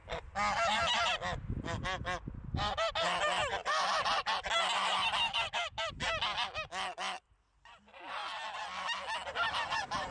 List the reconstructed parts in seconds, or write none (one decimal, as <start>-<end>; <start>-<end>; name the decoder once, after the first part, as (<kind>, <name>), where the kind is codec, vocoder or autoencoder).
none

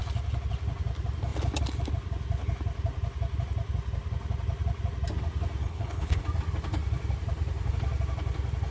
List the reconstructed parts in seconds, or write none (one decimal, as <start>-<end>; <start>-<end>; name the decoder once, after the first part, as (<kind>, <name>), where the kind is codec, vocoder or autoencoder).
5.6-6.2 (codec, HILCodec)

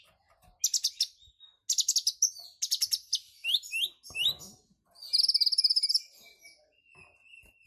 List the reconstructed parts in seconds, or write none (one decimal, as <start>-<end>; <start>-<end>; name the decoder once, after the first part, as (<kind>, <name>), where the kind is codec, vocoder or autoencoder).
none